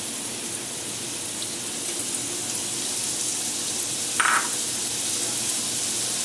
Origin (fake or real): real